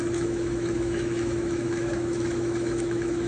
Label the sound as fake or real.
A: fake